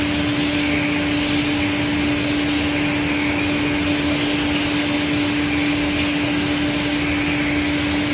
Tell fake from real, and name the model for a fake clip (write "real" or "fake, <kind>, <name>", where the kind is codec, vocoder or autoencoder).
real